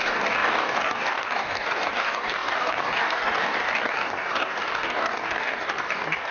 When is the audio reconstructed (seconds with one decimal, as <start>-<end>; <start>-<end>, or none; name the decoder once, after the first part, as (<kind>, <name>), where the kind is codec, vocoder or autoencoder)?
0.0-6.3 (codec, DAC)